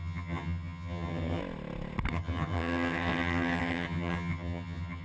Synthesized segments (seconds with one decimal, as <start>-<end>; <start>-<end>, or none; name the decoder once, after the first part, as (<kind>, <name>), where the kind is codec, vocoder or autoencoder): 0.0-1.4 (vocoder, HiFi-GAN); 2.1-5.0

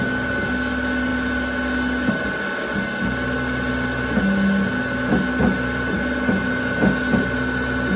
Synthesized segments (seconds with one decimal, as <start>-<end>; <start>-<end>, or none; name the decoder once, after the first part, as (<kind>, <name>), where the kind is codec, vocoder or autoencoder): none

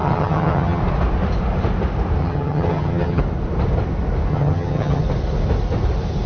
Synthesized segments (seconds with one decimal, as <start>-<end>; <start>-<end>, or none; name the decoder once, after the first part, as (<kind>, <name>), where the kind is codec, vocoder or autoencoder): 0.0-0.8 (vocoder, HiFi-GAN); 2.2-3.2; 4.3-5.0